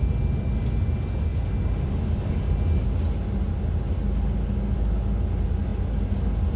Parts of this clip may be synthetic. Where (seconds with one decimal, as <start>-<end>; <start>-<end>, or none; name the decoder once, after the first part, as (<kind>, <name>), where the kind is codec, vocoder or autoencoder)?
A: none